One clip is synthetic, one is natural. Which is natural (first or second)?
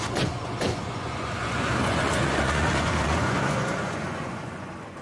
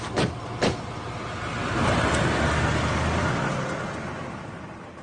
second